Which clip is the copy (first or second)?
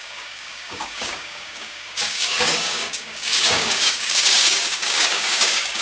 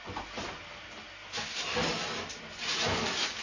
first